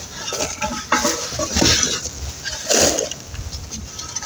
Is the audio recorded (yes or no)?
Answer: no